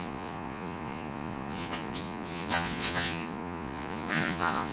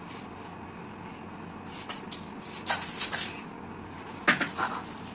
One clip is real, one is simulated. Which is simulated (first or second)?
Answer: first